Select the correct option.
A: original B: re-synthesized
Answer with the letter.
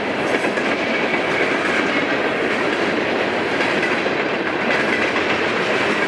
A